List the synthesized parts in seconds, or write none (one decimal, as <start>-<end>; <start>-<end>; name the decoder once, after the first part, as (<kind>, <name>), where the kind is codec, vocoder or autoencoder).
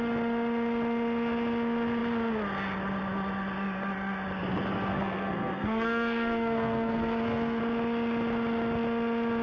4.9-7.6 (codec, SNAC)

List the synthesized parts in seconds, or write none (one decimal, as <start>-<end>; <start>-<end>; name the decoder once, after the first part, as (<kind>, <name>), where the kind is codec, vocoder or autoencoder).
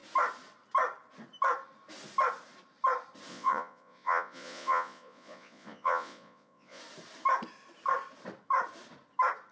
3.3-6.8 (vocoder, Vocos)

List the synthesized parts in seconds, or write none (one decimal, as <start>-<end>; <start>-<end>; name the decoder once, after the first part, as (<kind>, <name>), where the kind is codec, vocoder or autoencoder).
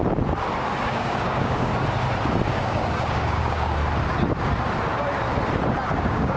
0.8-1.7 (codec, DAC); 2.5-3.8; 6.0-6.4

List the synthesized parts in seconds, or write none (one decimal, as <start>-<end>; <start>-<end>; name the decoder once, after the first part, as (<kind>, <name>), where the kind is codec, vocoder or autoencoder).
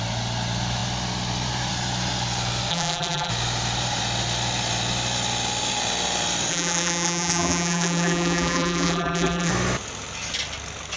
2.7-3.3 (vocoder, BigVGAN v2); 6.5-9.5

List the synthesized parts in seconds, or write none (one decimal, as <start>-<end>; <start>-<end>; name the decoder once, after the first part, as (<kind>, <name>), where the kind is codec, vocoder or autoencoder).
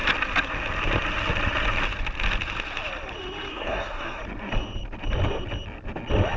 3.5-4.2 (codec, SNAC)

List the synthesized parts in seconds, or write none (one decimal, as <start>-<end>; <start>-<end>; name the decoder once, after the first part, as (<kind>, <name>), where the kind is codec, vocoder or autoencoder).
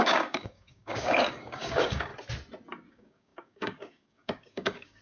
0.0-2.1 (codec, DAC); 2.9-5.0